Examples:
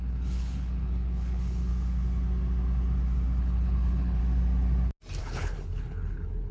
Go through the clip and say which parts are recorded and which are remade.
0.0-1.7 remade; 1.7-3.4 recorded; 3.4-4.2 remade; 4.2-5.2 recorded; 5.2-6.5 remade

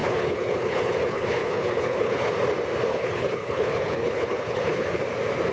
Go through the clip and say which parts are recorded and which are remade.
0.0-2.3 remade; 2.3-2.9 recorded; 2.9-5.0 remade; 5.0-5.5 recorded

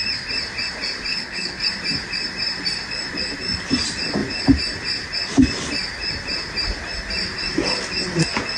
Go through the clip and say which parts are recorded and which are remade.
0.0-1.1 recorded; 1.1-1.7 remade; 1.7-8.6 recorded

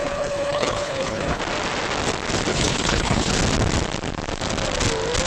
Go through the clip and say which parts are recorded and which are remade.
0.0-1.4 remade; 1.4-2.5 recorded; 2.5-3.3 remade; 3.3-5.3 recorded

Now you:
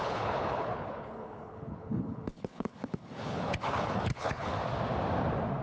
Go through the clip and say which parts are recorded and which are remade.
0.0-4.6 remade; 4.6-5.6 recorded